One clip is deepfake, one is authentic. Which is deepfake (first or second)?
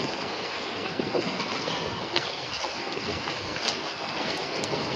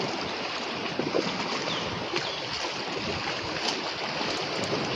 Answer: first